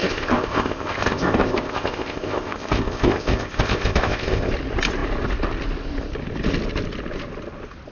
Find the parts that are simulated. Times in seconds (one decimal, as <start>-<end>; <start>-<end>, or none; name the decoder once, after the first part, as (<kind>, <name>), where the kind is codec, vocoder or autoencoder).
0.0-4.5 (codec, ZipCodec)